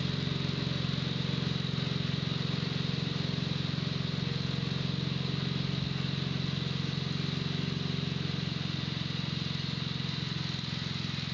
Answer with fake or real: real